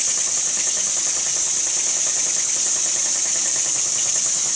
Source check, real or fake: real